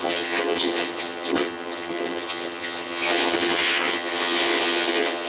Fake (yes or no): yes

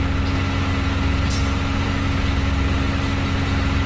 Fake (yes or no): no